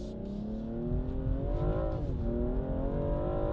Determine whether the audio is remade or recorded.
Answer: recorded